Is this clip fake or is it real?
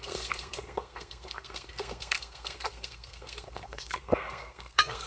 fake